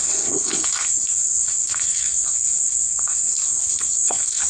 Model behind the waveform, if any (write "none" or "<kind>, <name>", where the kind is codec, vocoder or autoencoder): codec, SNAC